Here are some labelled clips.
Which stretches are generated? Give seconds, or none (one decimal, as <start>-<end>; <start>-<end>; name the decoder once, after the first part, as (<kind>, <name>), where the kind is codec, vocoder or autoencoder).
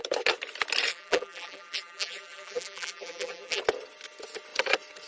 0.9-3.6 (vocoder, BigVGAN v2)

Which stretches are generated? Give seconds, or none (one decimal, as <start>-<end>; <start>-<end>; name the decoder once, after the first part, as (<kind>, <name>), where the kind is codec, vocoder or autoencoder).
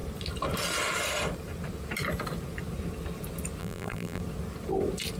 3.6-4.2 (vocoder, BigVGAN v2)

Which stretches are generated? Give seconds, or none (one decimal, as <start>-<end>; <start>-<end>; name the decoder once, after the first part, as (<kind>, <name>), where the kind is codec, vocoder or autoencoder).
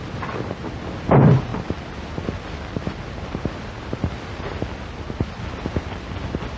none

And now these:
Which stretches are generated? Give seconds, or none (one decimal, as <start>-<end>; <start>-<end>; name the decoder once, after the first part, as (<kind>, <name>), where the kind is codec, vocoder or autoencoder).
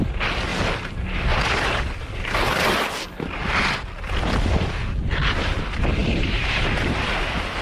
6.0-7.1 (vocoder, BigVGAN v2)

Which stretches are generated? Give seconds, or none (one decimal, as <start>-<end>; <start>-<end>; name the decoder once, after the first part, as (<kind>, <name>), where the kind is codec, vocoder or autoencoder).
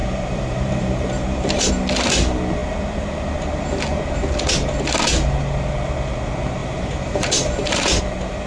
0.0-1.7 (vocoder, BigVGAN v2); 6.6-8.0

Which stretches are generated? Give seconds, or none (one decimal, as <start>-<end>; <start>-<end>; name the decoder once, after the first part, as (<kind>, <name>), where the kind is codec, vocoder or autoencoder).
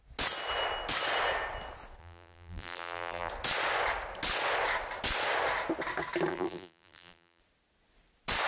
2.0-3.3 (vocoder, BigVGAN v2); 6.3-7.4